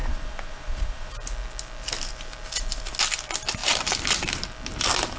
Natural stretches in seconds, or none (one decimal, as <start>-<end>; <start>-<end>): 1.1-5.2